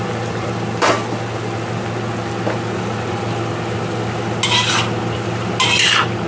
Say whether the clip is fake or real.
real